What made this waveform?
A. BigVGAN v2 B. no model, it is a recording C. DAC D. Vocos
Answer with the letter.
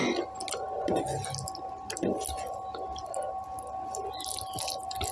B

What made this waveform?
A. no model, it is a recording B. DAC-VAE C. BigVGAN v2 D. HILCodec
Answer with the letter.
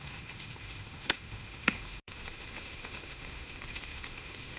B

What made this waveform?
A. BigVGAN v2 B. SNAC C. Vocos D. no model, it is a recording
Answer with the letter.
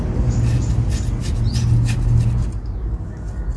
D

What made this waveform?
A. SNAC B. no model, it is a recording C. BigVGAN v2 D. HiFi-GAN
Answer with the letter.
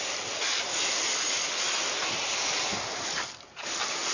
B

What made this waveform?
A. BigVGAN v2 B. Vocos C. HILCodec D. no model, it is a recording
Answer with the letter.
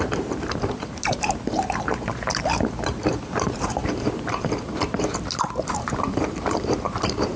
A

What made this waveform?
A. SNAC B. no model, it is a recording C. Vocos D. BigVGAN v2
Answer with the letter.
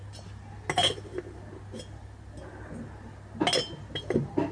B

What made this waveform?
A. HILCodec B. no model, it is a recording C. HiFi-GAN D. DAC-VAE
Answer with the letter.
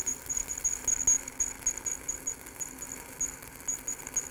B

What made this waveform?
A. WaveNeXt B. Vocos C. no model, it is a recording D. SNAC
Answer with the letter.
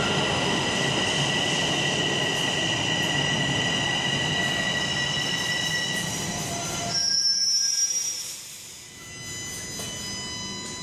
C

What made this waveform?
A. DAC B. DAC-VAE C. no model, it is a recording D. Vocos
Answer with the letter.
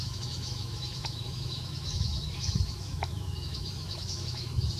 B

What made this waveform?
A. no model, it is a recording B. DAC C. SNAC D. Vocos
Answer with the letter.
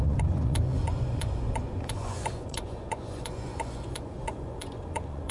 D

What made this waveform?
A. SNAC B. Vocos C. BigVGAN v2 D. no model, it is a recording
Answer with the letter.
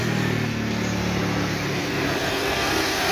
D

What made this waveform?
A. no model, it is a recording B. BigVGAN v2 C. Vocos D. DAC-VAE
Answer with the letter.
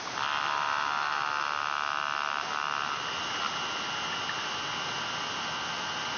A